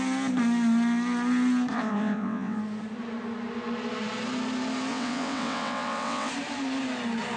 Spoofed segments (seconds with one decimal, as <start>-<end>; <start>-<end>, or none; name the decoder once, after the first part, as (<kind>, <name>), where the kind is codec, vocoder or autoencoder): 1.7-2.6 (vocoder, WaveNeXt); 4.9-6.3